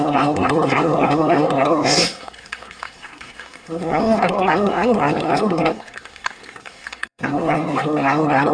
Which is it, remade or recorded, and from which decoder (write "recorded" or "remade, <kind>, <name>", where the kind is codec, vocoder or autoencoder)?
remade, codec, SNAC